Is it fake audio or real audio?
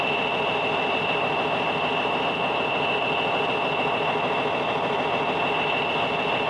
real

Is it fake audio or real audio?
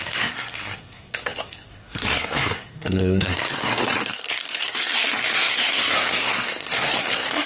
fake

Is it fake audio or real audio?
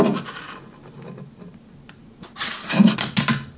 real